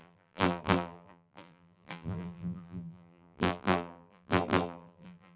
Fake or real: fake